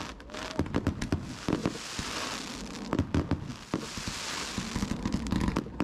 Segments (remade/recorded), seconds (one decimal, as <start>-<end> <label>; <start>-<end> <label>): 0.0-1.6 recorded; 1.6-2.7 remade; 2.7-5.8 recorded